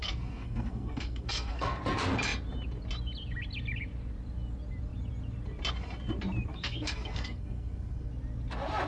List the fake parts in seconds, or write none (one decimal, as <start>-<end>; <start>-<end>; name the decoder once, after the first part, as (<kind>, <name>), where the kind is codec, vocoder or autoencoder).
0.0-1.8 (codec, SNAC); 6.5-8.1